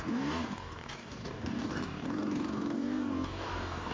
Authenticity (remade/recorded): remade